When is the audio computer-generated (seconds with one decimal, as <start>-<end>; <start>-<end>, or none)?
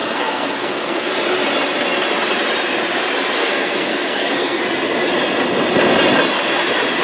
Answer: 0.0-1.1; 3.4-4.6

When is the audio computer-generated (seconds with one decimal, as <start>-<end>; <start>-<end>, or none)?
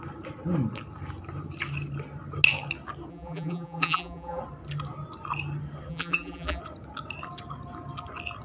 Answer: 3.1-4.4; 5.9-6.6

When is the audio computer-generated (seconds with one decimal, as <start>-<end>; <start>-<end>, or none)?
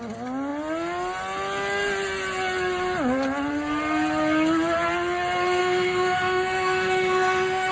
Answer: 5.6-7.7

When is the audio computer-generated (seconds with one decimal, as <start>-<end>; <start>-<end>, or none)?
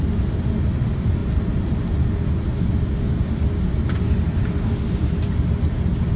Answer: none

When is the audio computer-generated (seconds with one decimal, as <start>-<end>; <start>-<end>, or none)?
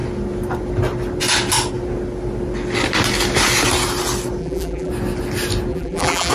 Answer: 4.4-4.9; 5.7-6.3